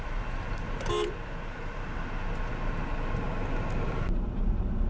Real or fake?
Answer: real